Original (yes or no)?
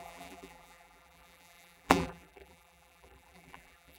no